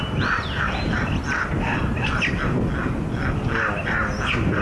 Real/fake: real